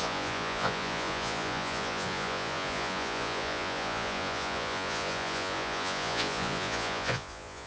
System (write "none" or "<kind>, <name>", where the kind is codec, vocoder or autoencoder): vocoder, Vocos